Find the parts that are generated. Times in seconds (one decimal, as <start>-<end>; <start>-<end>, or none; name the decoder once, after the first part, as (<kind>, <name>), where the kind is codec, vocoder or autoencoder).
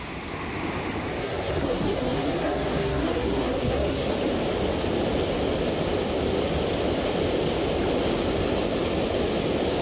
1.2-4.1 (codec, SNAC)